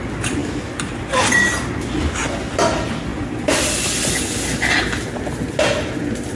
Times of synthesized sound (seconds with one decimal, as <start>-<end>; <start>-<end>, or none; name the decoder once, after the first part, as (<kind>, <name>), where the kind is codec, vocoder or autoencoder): none